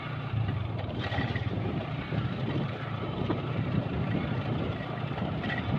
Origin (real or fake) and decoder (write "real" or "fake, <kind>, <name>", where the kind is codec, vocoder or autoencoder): fake, vocoder, BigVGAN v2